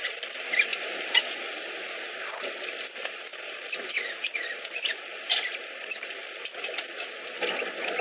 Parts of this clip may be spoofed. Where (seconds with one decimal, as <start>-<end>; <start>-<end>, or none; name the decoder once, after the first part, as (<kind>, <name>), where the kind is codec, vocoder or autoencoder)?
3.3-5.2 (vocoder, BigVGAN v2)